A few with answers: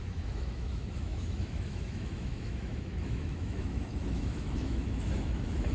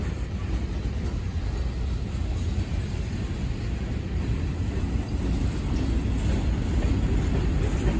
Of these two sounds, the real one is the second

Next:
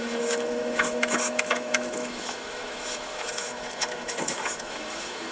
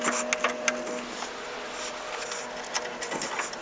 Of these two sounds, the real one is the second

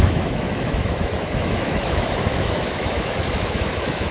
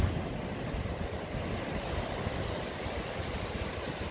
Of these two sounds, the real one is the second